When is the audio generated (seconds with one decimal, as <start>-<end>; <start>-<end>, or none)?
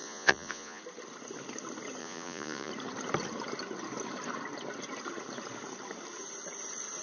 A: 0.0-0.8; 2.0-2.7